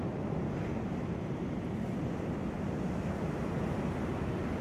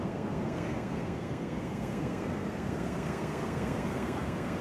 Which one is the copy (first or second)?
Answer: second